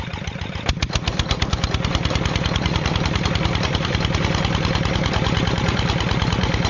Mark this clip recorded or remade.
remade